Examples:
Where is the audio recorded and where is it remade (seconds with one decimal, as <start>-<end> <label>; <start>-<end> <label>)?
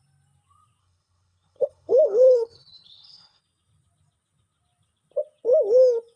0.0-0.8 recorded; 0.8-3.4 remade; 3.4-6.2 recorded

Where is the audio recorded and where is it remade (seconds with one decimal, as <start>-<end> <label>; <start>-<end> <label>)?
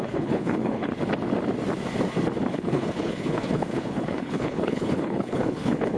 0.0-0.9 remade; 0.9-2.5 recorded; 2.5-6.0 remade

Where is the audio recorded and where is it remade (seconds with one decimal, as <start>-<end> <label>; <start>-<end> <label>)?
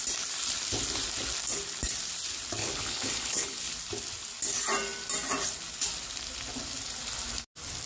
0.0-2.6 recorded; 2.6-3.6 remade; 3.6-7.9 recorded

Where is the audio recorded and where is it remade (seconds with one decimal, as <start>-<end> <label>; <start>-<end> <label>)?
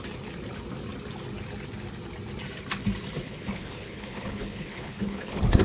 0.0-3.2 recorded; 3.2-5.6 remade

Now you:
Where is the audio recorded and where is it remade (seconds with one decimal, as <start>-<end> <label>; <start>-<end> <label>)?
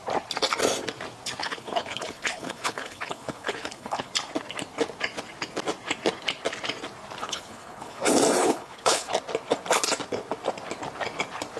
0.0-1.4 recorded; 1.4-4.1 remade; 4.1-7.2 recorded; 7.2-8.0 remade; 8.0-8.4 recorded; 8.4-9.1 remade; 9.1-11.6 recorded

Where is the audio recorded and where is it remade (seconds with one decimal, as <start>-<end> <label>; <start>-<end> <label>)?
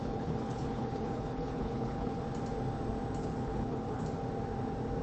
0.0-2.2 remade; 2.2-3.2 recorded; 3.2-4.0 remade; 4.0-5.0 recorded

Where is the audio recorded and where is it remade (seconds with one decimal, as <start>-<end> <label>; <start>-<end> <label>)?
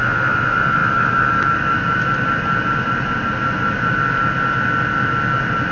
0.0-5.7 recorded